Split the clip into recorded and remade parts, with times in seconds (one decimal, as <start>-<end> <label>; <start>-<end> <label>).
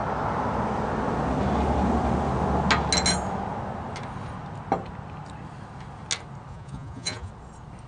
0.0-6.5 recorded; 6.5-7.3 remade; 7.3-7.9 recorded